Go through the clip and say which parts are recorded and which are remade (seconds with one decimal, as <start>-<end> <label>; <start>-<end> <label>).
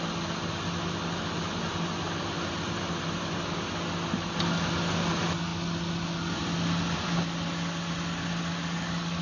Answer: 0.0-9.2 recorded